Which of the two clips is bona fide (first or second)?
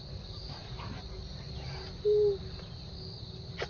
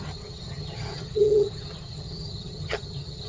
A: first